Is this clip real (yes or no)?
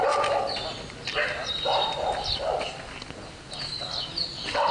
yes